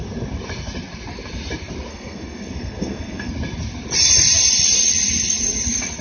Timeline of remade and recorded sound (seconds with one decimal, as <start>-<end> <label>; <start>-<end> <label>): 0.0-1.9 recorded; 1.9-3.3 remade; 3.3-6.0 recorded

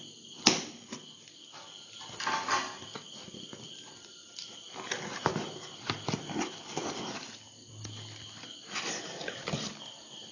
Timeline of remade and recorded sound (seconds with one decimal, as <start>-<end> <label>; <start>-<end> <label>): 0.0-5.3 remade; 5.3-6.1 recorded; 6.1-10.3 remade

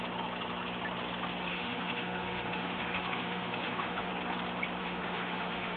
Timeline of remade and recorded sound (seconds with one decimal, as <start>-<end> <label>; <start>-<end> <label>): 0.0-1.5 recorded; 1.5-4.1 remade; 4.1-4.8 recorded; 4.8-5.8 remade

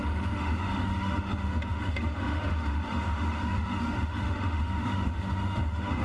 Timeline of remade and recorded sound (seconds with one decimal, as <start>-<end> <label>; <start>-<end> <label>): 0.0-6.0 remade

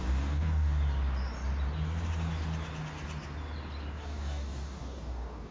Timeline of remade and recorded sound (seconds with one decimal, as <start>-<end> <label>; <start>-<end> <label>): 0.0-0.7 remade; 0.7-4.0 recorded; 4.0-5.5 remade

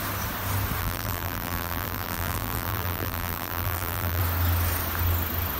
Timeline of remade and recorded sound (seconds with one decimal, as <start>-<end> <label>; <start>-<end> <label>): 0.0-0.8 recorded; 0.8-4.2 remade; 4.2-5.6 recorded

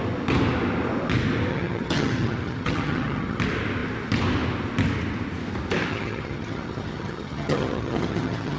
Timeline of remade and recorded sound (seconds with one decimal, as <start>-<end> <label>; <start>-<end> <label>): 0.0-1.5 recorded; 1.5-3.4 remade; 3.4-5.9 recorded; 5.9-8.6 remade

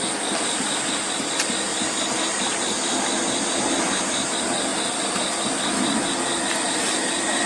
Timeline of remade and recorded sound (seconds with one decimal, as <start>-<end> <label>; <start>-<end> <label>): 0.0-7.5 recorded